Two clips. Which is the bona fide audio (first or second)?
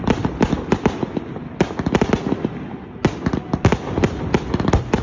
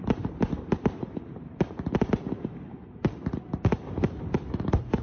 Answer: first